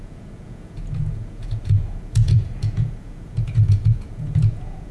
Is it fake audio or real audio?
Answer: fake